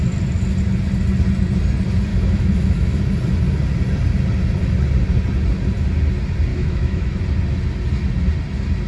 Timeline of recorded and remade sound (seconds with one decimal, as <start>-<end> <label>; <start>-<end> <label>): 0.0-2.1 recorded; 2.1-3.0 remade; 3.0-6.5 recorded; 6.5-7.2 remade; 7.2-8.9 recorded